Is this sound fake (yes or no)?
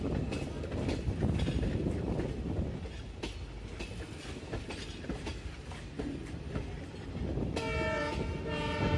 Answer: no